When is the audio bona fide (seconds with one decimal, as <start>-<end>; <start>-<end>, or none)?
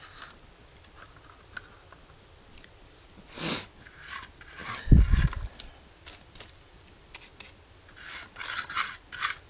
0.0-9.5